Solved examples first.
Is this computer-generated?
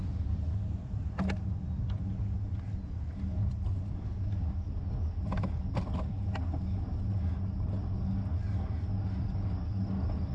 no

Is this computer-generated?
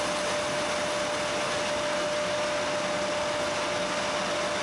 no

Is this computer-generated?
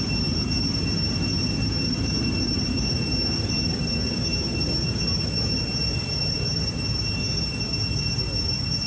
no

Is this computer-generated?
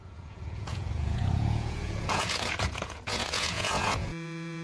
yes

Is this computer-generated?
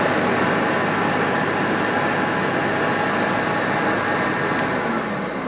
no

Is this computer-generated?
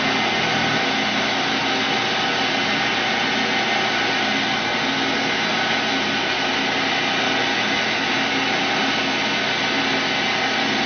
no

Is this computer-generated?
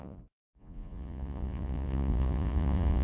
yes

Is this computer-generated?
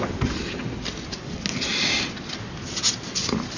no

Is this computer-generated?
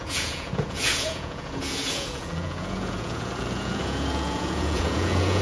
yes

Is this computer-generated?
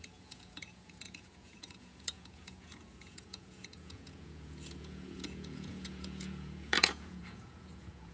yes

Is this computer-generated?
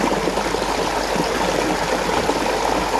no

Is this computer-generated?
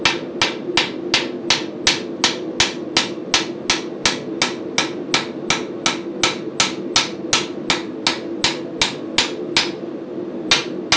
no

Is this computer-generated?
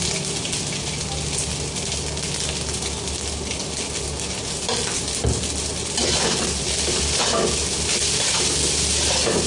no